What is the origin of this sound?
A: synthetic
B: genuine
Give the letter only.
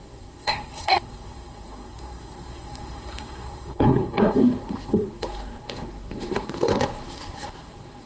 A